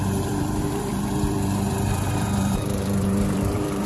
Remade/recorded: remade